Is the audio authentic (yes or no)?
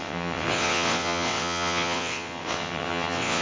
no